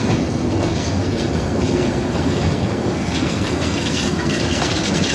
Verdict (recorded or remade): remade